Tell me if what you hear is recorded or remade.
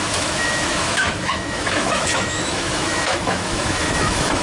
remade